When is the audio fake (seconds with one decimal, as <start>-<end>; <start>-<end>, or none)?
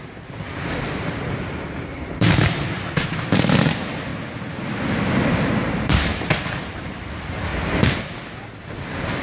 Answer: 0.0-4.1; 5.6-6.1; 6.7-7.5; 8.5-9.2